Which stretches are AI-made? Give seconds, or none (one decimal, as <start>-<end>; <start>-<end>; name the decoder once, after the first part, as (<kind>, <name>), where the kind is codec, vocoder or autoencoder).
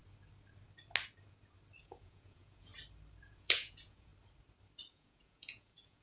1.8-2.7 (vocoder, Vocos); 3.2-4.1; 4.9-6.0